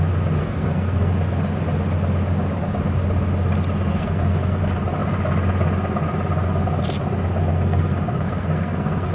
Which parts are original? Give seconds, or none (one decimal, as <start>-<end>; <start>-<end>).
0.0-0.4; 1.1-3.9; 4.6-7.5